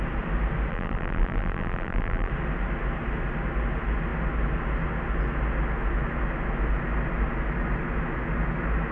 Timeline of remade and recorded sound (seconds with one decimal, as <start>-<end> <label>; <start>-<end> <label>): 0.0-0.7 recorded; 0.7-2.3 remade; 2.3-8.9 recorded